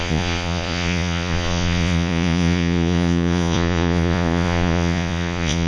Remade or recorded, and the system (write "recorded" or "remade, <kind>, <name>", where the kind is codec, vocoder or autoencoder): remade, vocoder, Vocos